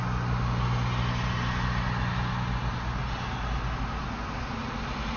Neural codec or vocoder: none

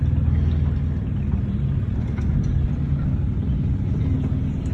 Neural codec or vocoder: none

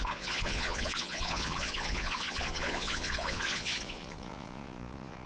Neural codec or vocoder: vocoder, Vocos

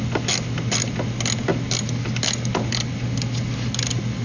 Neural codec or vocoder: none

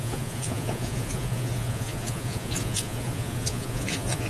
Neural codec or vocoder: vocoder, Vocos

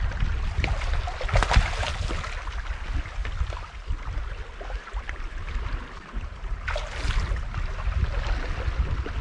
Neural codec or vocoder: none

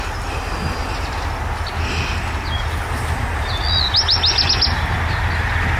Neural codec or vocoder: none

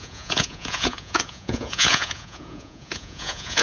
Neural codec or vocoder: vocoder, Vocos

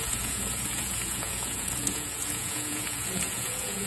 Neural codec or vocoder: vocoder, Vocos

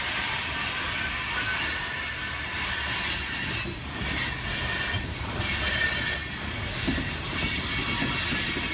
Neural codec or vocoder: none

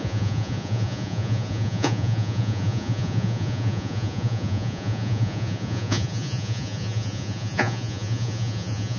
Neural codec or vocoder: vocoder, Vocos